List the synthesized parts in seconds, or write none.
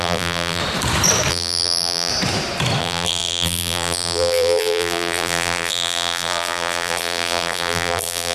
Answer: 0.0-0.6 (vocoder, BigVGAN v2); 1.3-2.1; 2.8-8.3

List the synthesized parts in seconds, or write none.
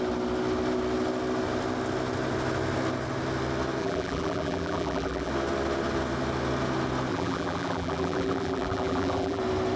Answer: 3.8-5.3 (vocoder, BigVGAN v2); 7.1-9.4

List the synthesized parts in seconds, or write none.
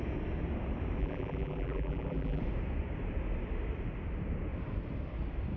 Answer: 1.0-2.4 (vocoder, BigVGAN v2)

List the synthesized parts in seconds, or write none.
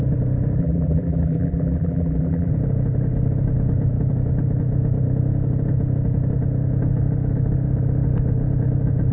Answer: 0.6-2.5 (vocoder, BigVGAN v2)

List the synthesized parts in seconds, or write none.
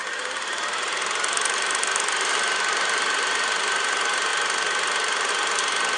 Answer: 0.0-3.6 (vocoder, BigVGAN v2); 4.3-5.3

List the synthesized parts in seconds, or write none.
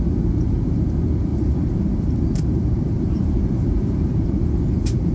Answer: 1.3-4.4 (vocoder, BigVGAN v2)